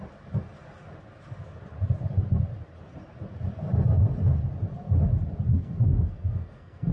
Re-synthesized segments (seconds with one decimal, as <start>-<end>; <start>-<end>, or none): 5.5-6.9